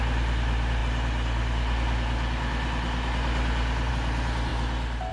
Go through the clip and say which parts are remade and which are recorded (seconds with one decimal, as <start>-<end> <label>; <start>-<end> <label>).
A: 0.0-5.1 recorded